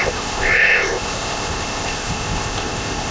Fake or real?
fake